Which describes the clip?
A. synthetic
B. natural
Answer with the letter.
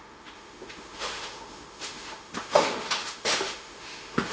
A